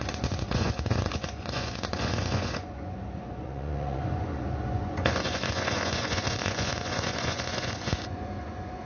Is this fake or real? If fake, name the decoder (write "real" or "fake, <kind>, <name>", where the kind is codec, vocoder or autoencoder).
fake, vocoder, Vocos